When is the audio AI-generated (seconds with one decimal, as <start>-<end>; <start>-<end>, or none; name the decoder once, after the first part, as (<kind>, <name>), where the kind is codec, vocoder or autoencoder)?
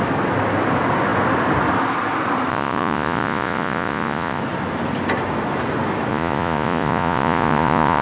2.5-4.4 (vocoder, Vocos); 6.1-8.0